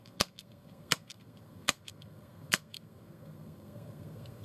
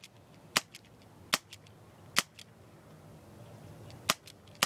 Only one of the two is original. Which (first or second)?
second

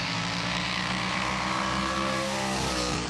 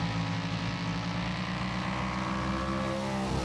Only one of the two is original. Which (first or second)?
second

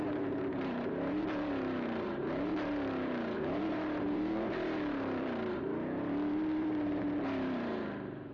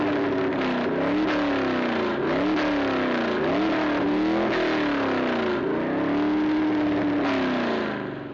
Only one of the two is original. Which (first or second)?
second